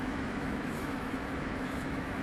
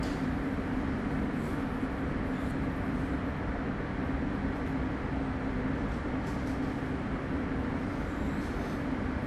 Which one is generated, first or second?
first